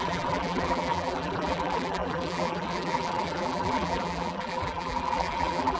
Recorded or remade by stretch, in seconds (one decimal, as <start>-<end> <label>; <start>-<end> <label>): 0.0-5.8 remade